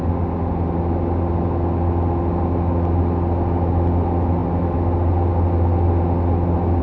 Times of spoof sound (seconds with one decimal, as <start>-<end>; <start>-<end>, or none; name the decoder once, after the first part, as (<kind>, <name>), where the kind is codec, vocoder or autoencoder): none